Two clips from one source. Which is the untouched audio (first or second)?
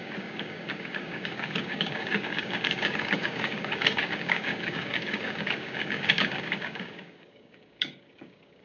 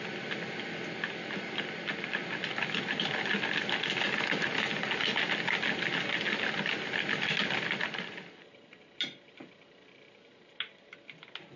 second